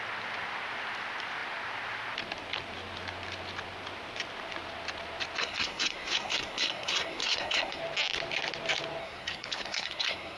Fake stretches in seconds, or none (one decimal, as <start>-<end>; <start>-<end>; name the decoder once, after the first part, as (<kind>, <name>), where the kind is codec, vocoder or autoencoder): 5.4-7.8 (codec, SNAC); 9.0-10.4